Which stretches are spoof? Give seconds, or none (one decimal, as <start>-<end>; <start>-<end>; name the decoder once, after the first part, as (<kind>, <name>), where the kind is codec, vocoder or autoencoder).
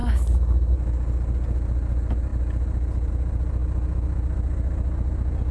none